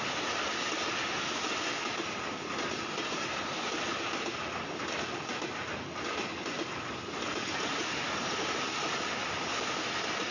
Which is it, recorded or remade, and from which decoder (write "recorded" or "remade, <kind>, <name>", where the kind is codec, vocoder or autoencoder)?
recorded